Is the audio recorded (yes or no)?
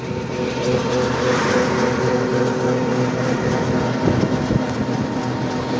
yes